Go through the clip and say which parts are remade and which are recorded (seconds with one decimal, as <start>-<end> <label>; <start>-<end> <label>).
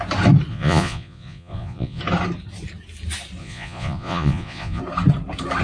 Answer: 0.0-0.5 recorded; 0.5-2.0 remade; 2.0-3.4 recorded; 3.4-4.8 remade; 4.8-5.6 recorded